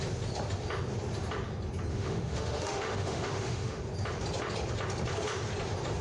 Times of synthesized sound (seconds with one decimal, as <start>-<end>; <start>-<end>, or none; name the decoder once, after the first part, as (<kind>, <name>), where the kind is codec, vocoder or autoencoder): 1.9-3.8 (autoencoder, DAC-VAE)